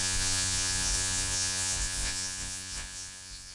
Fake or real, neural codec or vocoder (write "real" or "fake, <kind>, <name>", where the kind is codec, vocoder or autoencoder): fake, vocoder, Vocos